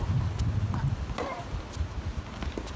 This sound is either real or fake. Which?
real